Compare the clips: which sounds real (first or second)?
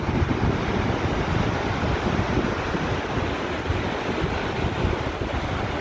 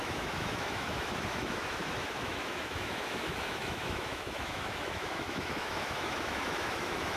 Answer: first